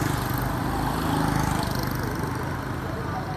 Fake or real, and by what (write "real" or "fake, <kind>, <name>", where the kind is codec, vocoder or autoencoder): real